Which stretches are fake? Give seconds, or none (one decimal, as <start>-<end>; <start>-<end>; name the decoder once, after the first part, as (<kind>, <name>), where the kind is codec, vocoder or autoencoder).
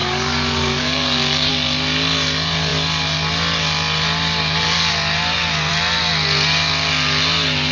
0.0-1.5 (codec, DAC)